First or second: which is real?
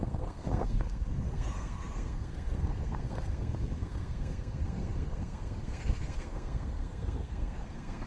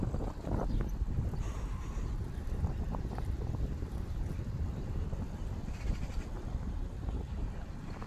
second